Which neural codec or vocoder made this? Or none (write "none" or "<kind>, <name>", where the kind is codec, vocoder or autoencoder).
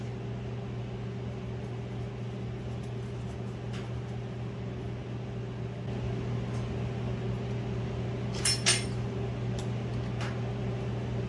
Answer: none